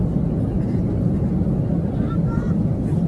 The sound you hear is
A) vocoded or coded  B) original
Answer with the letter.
B